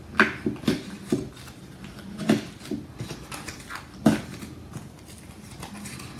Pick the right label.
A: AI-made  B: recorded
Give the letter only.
B